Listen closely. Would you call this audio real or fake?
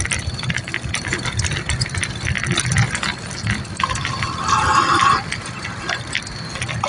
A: real